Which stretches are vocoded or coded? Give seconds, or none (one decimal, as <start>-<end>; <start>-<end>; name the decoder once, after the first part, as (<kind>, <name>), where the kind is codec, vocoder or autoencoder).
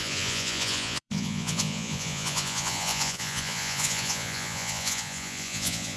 0.0-6.0 (vocoder, Vocos)